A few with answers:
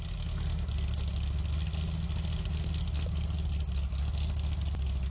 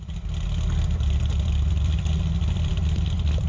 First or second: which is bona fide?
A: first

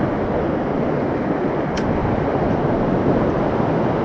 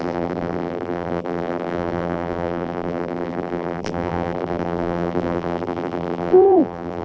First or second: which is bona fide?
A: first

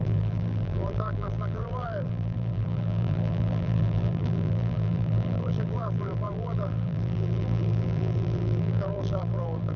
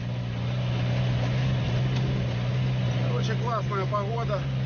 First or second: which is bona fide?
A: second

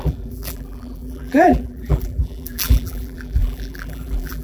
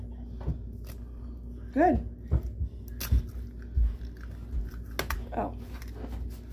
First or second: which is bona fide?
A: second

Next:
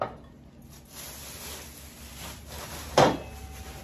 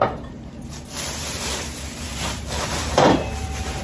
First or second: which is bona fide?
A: first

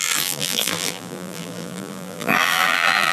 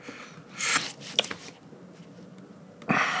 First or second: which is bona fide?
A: second